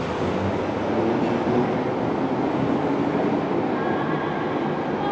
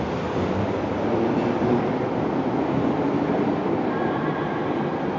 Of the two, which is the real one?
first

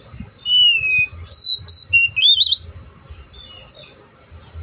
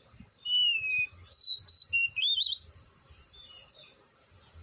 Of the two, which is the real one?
first